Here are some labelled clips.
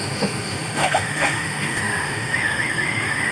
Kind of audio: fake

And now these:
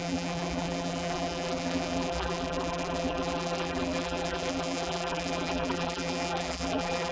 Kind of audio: fake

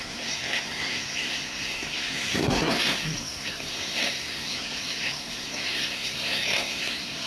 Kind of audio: fake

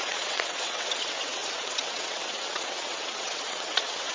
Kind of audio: fake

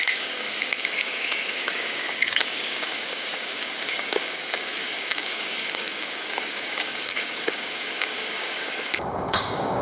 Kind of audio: fake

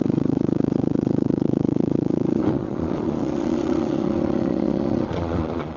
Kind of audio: fake